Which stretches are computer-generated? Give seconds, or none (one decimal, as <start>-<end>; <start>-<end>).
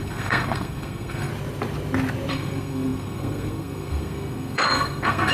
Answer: 0.0-1.3; 2.3-5.3